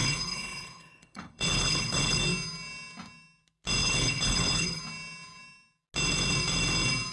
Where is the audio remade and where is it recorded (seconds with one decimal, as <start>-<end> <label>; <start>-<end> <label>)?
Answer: 0.0-2.2 remade; 2.2-3.8 recorded; 3.8-4.8 remade; 4.8-7.1 recorded